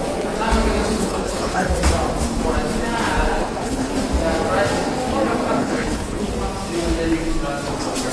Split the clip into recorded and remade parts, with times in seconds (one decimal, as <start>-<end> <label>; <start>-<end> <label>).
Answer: 0.0-0.9 recorded; 0.9-1.7 remade; 1.7-3.4 recorded; 3.4-3.9 remade; 3.9-5.6 recorded; 5.6-6.2 remade; 6.2-8.1 recorded